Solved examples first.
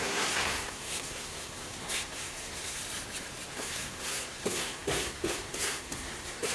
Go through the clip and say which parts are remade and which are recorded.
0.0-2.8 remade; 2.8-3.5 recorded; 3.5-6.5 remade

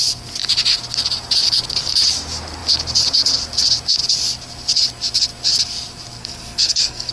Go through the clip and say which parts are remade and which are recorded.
0.0-6.2 recorded; 6.2-7.1 remade

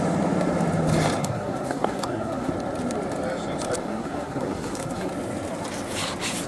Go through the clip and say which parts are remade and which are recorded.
0.0-1.2 recorded; 1.2-2.5 remade; 2.5-3.8 recorded; 3.8-5.1 remade; 5.1-6.5 recorded